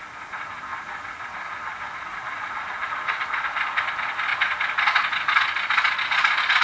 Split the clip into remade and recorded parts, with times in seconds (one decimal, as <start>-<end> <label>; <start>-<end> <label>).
0.0-2.1 recorded; 2.1-3.6 remade; 3.6-6.6 recorded